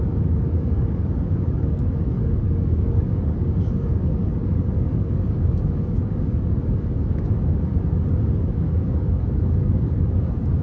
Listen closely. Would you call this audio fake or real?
fake